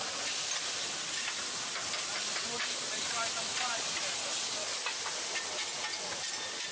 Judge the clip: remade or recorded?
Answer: recorded